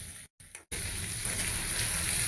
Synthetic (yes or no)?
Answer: no